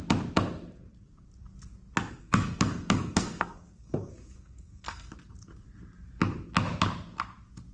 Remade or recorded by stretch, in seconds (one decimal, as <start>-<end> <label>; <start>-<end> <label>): 0.0-2.2 recorded; 2.2-5.1 remade; 5.1-7.7 recorded